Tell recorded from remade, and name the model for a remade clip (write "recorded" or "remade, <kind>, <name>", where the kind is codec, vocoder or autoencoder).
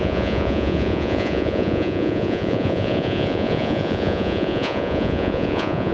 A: remade, vocoder, Vocos